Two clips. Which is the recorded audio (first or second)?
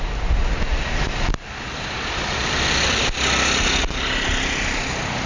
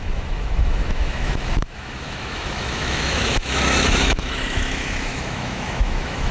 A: first